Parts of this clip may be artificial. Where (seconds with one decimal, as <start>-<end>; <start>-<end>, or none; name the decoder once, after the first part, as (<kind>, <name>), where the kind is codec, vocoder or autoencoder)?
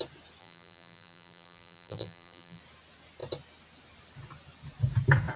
0.4-2.6 (vocoder, BigVGAN v2)